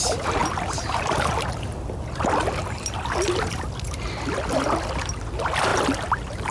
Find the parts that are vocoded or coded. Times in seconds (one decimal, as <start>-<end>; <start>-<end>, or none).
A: none